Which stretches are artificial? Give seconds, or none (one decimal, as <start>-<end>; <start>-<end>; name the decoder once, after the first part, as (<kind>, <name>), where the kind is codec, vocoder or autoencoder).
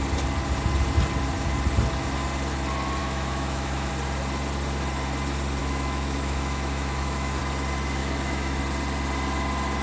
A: 3.0-3.9 (autoencoder, DAC-VAE); 5.6-7.4; 8.0-8.6